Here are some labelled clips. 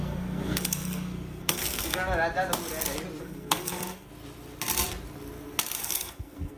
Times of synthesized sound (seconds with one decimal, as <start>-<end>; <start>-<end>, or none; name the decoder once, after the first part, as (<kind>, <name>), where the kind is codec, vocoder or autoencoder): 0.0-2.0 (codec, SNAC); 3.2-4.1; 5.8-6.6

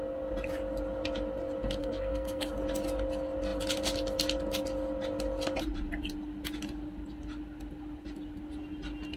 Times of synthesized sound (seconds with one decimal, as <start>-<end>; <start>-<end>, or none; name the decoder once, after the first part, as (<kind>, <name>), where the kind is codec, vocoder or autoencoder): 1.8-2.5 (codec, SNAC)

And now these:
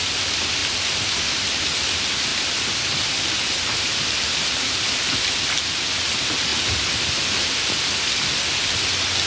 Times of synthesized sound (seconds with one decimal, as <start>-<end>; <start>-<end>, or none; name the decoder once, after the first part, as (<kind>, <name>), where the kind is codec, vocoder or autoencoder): none

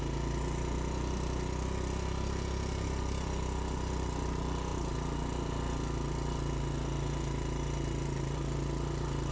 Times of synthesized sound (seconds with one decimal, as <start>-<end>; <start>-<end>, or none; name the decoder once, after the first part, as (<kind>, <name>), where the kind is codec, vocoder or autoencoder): none